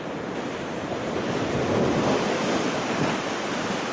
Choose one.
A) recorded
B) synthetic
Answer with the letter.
A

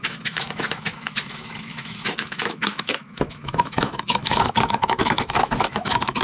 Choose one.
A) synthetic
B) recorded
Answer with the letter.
A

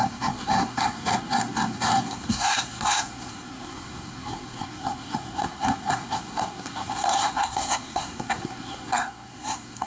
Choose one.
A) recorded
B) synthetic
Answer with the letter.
B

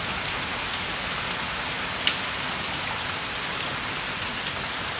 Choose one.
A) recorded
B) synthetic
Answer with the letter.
A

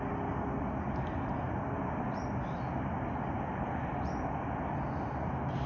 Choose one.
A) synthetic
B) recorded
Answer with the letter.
B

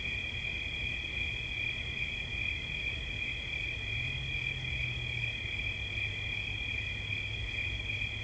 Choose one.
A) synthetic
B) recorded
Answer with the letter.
B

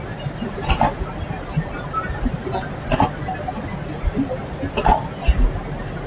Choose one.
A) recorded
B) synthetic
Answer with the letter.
A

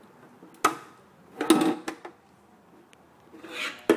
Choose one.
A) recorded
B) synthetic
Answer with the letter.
A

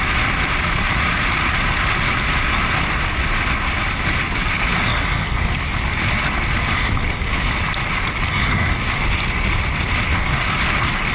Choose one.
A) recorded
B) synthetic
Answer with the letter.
A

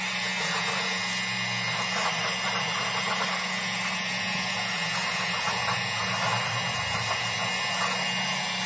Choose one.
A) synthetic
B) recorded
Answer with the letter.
B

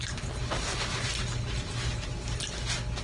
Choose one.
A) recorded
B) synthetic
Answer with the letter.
A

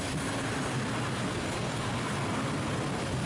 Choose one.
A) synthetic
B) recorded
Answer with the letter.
B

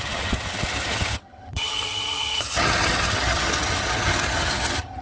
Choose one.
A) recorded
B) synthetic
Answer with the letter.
B